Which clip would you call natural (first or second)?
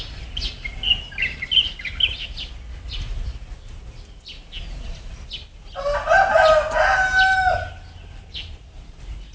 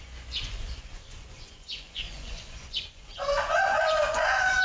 first